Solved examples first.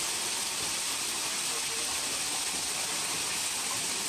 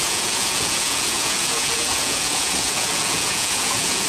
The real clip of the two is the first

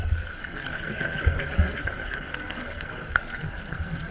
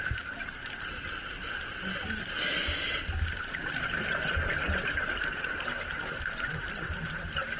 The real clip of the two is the second